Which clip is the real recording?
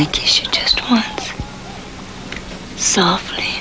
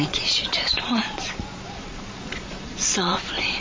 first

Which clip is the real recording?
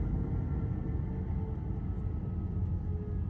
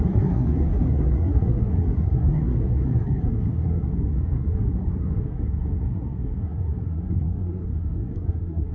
first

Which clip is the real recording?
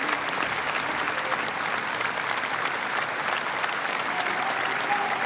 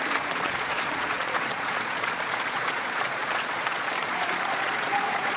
first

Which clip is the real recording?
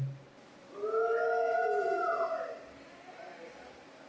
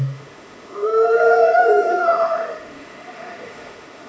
first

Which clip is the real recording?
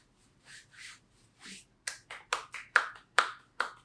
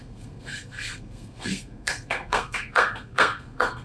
first